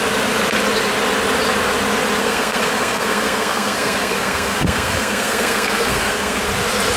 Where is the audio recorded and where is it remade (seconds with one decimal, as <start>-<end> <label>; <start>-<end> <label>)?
0.0-2.2 recorded; 2.2-6.4 remade; 6.4-7.0 recorded